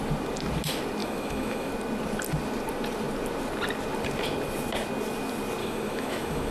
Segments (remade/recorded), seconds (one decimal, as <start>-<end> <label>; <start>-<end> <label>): 0.0-1.0 recorded; 1.0-1.7 remade; 1.7-5.6 recorded; 5.6-6.5 remade